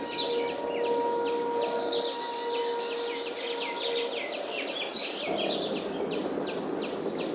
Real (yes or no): yes